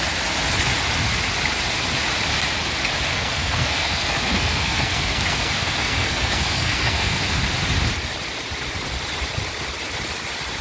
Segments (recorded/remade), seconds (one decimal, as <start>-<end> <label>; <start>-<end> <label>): 0.0-3.1 recorded; 3.1-7.4 remade; 7.4-10.6 recorded